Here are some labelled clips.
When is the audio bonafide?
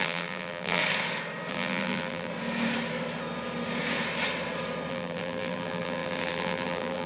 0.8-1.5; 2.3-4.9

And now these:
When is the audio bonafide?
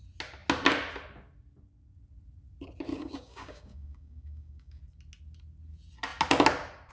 0.0-2.9; 4.8-6.9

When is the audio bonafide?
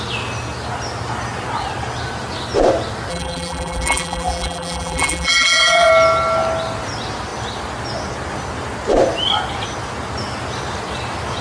0.0-3.1; 5.9-11.4